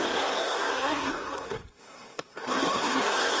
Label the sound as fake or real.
fake